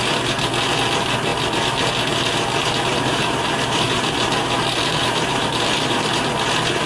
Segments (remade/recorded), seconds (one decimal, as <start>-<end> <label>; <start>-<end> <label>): 0.0-2.6 recorded; 2.6-6.2 remade; 6.2-6.9 recorded